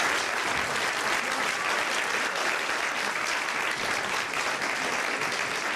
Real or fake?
real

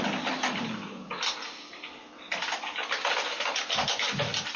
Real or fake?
real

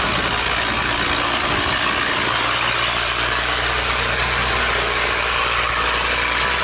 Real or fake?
real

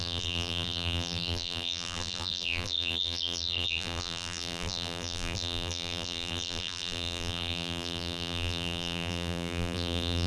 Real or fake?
fake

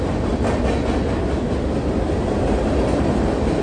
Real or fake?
real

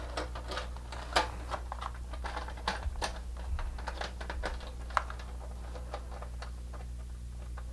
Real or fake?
real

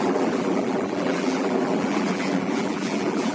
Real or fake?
fake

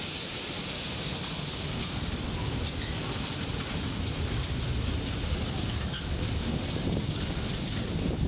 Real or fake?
real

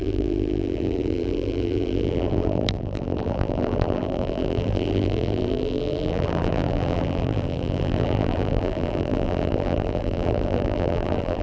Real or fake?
fake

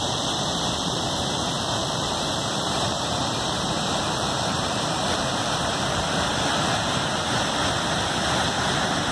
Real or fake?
fake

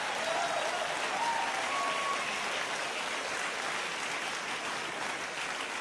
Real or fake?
real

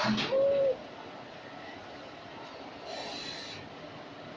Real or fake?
real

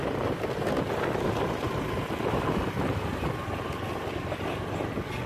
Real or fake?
real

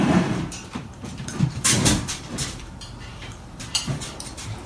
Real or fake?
fake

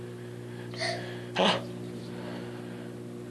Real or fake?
real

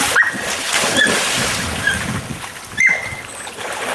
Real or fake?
fake